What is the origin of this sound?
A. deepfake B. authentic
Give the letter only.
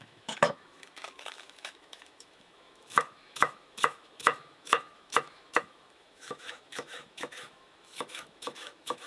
A